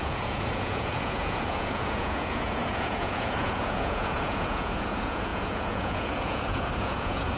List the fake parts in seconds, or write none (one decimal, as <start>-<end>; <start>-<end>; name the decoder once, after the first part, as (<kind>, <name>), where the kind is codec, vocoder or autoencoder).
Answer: 0.0-7.4 (vocoder, Vocos)